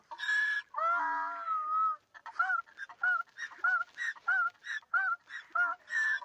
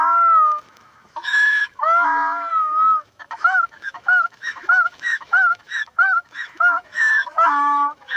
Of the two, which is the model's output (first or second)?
second